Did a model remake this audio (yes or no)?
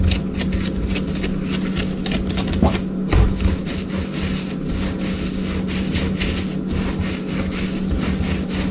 no